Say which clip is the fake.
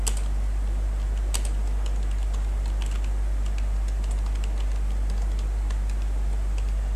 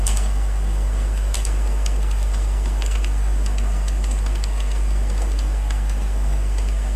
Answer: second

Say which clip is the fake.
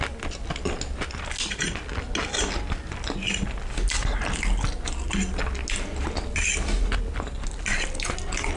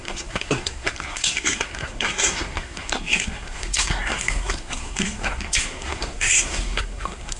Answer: second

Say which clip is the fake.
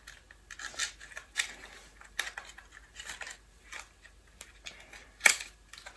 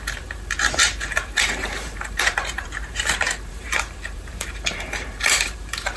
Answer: second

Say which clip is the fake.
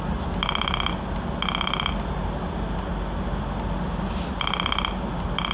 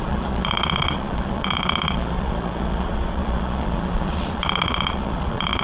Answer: second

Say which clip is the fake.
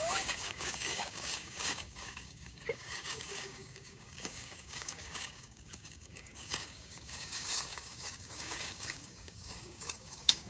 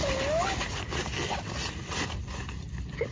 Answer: first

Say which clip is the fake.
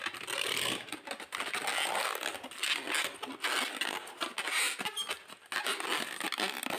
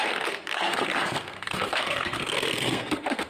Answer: second